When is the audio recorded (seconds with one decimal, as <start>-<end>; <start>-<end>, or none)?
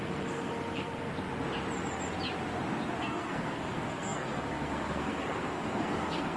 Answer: 1.1-3.0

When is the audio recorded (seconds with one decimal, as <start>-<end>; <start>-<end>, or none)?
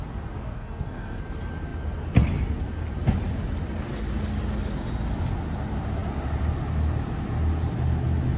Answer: 0.0-0.4; 1.2-8.4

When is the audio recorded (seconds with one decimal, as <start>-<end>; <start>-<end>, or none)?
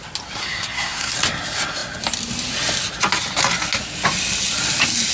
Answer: 0.0-0.4; 1.1-5.1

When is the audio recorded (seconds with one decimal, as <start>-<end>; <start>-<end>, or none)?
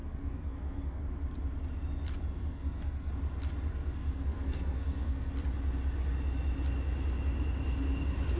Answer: 1.0-2.4; 3.1-3.7; 5.3-8.4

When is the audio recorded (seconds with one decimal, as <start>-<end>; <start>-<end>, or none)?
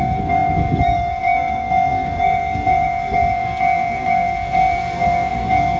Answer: none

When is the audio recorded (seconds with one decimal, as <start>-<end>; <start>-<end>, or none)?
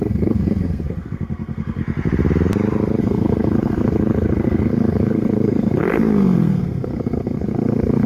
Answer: 1.8-3.0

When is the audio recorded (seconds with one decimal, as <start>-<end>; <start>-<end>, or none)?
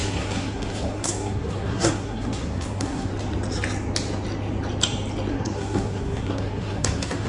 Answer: 3.1-5.3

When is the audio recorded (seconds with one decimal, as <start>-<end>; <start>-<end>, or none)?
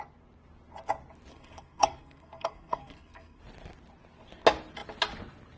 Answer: 0.0-1.3; 3.4-5.6